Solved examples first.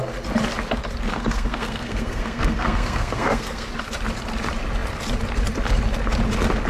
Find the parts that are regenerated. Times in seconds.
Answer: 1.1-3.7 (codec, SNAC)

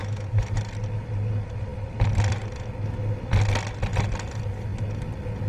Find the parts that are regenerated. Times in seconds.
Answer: 0.0-0.5 (autoencoder, DAC-VAE)

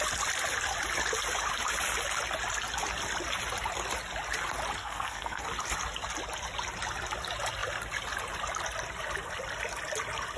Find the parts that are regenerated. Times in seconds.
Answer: 4.8-5.4 (codec, SNAC)

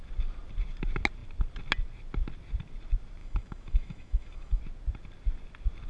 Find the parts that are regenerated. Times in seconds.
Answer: 3.2-4.6 (autoencoder, DAC-VAE)